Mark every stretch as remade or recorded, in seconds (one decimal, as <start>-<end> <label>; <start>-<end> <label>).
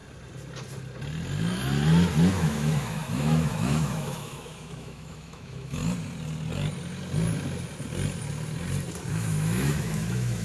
0.0-2.3 recorded; 2.3-5.8 remade; 5.8-9.1 recorded; 9.1-10.4 remade